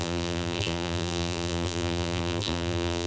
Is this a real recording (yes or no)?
no